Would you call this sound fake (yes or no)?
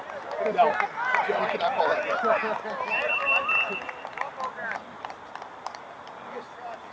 no